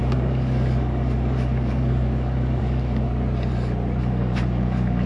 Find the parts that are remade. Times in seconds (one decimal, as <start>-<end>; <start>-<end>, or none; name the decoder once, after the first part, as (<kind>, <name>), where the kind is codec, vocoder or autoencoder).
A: 0.0-3.1 (codec, DAC); 4.0-5.1

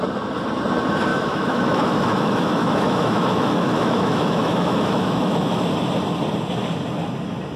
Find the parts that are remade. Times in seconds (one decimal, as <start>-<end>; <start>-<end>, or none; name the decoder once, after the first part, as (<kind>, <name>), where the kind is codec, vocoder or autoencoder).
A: 1.1-5.7 (autoencoder, DAC-VAE)

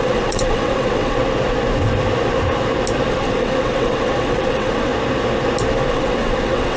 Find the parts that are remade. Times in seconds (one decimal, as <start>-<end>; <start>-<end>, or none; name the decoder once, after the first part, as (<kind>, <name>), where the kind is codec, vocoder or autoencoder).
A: 0.0-1.2 (vocoder, WaveNeXt); 3.1-4.9; 5.9-6.8

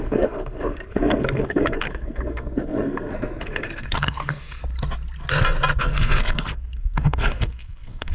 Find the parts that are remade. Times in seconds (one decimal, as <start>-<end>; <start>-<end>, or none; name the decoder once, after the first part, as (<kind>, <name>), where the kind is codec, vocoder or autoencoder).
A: 0.0-4.6 (codec, SNAC); 5.8-8.1

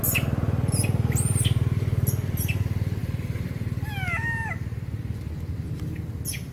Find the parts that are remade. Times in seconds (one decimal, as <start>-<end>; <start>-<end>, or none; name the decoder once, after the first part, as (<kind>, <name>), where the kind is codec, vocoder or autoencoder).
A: 3.0-3.9 (vocoder, BigVGAN v2)

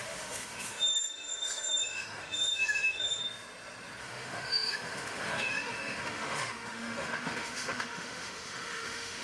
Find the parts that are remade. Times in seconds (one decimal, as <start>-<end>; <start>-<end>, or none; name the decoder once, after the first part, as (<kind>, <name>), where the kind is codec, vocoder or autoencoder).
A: 0.0-3.2 (autoencoder, DAC-VAE); 4.0-9.2

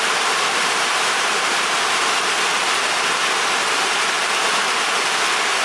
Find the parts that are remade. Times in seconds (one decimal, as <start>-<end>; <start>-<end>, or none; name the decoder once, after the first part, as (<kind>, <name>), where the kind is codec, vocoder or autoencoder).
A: 0.6-2.3 (vocoder, BigVGAN v2); 3.6-4.5